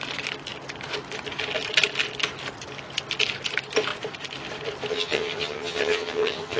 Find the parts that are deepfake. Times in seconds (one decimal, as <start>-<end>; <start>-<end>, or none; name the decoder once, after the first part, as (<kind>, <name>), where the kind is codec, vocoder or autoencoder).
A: 4.9-6.6 (vocoder, HiFi-GAN)